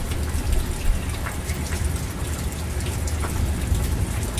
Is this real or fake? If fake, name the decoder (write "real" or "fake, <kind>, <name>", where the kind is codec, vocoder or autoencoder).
real